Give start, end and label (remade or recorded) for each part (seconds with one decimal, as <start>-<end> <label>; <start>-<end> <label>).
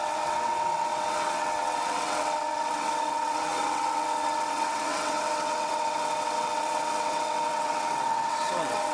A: 0.0-8.9 remade